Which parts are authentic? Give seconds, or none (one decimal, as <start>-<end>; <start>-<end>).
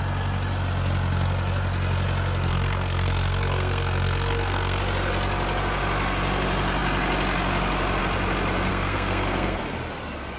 0.0-2.5; 4.8-8.7; 9.6-10.4